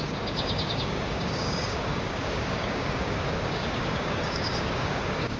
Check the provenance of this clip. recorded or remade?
remade